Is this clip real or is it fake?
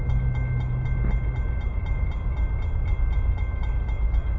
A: real